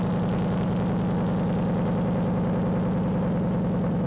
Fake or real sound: real